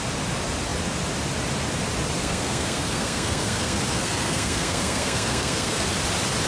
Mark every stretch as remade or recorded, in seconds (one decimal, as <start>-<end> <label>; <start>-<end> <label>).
0.0-2.2 recorded; 2.2-5.9 remade; 5.9-6.5 recorded